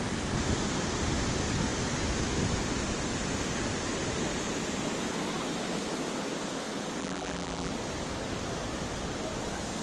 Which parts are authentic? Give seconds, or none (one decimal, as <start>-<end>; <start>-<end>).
0.0-7.0; 7.7-9.8